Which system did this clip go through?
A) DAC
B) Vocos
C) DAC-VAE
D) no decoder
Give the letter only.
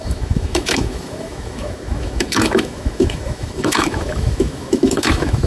C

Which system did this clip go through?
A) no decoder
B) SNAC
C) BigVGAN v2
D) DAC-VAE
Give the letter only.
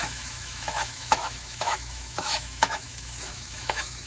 D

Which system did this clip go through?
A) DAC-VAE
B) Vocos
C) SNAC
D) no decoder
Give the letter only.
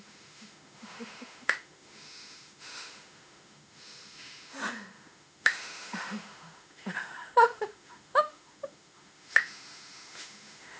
A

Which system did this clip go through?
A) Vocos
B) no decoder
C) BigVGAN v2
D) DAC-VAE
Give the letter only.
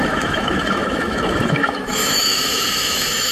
D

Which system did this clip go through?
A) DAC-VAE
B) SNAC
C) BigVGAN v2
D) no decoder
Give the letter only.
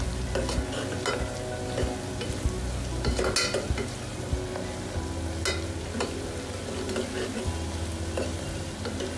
D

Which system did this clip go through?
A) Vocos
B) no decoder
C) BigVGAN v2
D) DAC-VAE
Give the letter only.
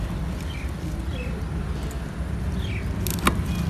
B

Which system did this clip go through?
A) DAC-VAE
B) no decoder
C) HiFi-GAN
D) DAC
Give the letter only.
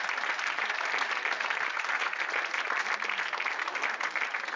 B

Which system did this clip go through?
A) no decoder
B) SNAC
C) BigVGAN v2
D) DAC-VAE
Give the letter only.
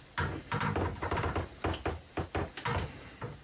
A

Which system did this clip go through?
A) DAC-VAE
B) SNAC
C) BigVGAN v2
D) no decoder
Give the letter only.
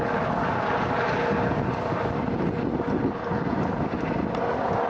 D